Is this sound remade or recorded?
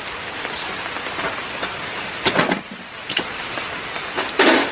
recorded